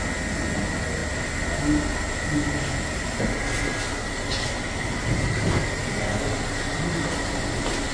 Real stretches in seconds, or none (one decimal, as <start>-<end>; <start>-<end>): 0.0-7.9